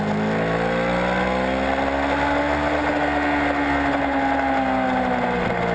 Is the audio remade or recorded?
recorded